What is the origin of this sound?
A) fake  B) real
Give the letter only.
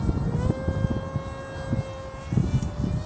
B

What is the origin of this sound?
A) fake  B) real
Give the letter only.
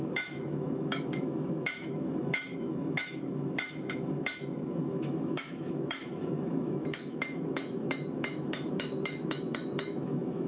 A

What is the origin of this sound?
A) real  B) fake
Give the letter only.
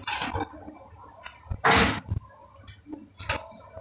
A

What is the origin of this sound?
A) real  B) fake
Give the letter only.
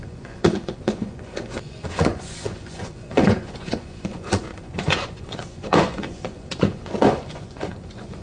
B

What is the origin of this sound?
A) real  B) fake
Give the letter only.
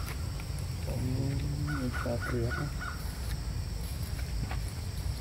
A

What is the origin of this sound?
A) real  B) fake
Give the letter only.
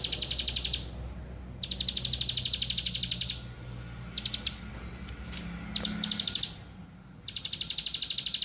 A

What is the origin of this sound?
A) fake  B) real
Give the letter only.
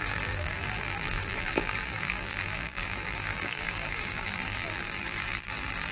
A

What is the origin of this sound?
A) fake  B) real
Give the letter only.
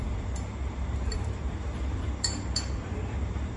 A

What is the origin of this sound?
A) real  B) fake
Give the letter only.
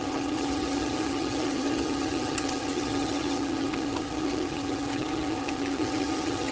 B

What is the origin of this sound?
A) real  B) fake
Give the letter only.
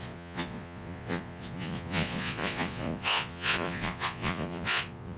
B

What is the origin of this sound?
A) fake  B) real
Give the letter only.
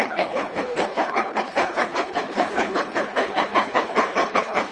A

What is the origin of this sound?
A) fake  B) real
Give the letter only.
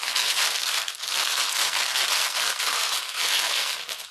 A